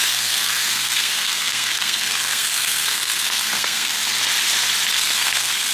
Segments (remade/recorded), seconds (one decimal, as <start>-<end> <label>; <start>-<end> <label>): 0.0-4.0 remade; 4.0-4.9 recorded; 4.9-5.7 remade